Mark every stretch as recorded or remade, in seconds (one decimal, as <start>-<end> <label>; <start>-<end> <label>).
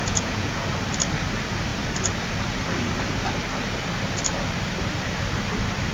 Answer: 0.0-0.7 remade; 0.7-5.9 recorded